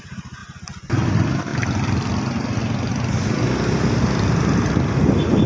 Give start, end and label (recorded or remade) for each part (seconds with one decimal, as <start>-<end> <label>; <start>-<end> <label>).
0.0-5.5 recorded